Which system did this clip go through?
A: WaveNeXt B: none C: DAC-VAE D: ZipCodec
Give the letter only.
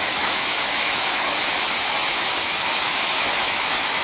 C